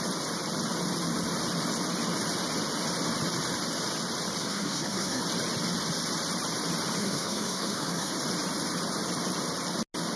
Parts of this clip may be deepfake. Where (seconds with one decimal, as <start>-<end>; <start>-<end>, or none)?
4.4-5.2; 7.0-8.1

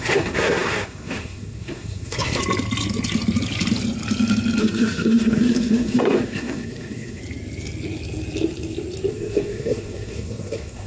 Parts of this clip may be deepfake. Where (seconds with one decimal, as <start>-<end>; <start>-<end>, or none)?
0.0-2.4; 4.6-7.2; 9.1-10.9

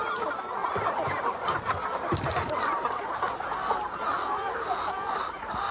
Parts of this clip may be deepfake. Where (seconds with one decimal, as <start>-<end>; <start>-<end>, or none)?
none

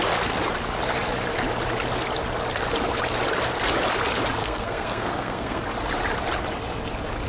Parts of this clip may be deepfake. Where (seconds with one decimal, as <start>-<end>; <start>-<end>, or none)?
4.4-5.6

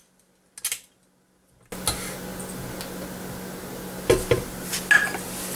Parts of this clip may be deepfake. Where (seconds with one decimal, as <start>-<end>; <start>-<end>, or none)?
none

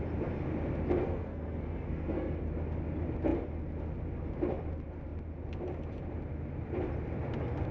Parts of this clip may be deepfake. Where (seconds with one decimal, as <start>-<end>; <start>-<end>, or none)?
1.0-2.4